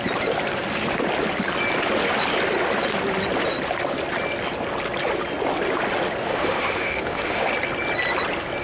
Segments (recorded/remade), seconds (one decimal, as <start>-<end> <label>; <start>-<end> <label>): 0.0-6.2 recorded; 6.2-7.5 remade; 7.5-8.6 recorded